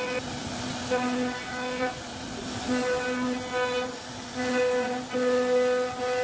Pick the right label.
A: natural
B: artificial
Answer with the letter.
A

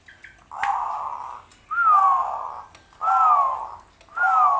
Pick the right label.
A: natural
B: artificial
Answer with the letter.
A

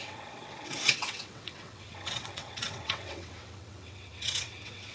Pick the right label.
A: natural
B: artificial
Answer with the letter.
B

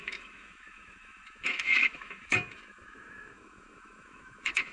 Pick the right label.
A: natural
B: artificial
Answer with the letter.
B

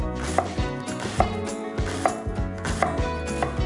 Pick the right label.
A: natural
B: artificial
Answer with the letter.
A